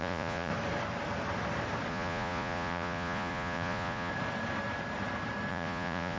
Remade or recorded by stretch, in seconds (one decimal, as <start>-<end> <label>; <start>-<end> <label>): 0.0-0.5 remade; 0.5-1.9 recorded; 1.9-4.1 remade; 4.1-5.5 recorded; 5.5-6.2 remade